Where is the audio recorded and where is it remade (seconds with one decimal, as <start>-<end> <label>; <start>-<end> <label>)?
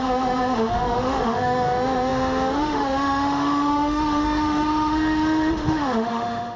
0.0-6.6 remade